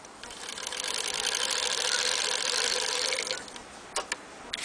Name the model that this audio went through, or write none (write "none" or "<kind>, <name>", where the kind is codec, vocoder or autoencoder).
none